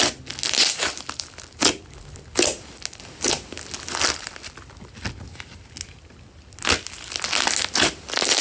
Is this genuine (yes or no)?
yes